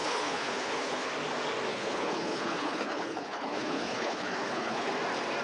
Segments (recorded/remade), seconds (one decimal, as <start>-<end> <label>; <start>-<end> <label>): 0.0-1.1 remade; 1.1-1.7 recorded; 1.7-4.9 remade; 4.9-5.4 recorded